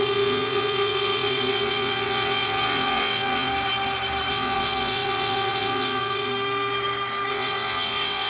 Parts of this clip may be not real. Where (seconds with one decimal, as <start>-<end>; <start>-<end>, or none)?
0.0-3.5; 4.3-6.3; 7.3-8.3